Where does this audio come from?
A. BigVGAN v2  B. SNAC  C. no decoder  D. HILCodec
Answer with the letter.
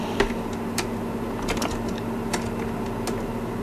C